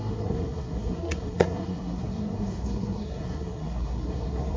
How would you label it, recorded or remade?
remade